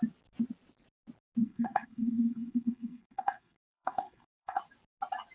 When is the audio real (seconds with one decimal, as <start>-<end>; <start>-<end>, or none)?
0.0-1.4; 4.6-5.3